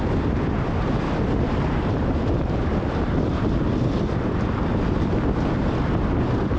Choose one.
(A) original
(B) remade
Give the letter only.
B